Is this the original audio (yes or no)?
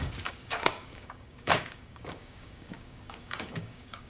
no